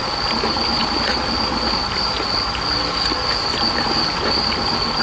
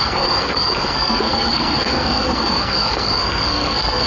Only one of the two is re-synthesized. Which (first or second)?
second